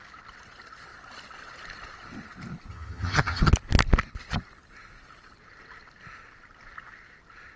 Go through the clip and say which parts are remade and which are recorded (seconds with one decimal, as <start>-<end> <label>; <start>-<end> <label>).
0.0-2.7 recorded; 2.7-3.5 remade; 3.5-7.6 recorded